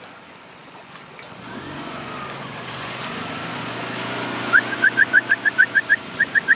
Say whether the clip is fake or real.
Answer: fake